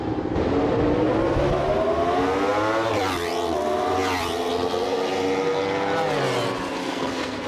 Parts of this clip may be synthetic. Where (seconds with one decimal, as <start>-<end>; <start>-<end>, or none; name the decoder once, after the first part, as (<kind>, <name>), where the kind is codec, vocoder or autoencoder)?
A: 6.8-7.5 (codec, SNAC)